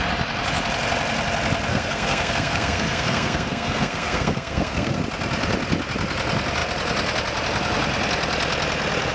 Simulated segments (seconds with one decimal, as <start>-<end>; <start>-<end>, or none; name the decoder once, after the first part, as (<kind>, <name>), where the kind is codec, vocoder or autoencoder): 1.7-5.0 (codec, SNAC)